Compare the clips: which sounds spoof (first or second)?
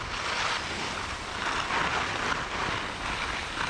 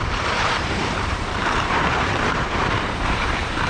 second